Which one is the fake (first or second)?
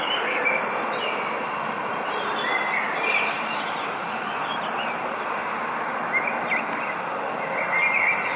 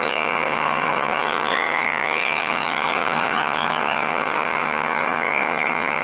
second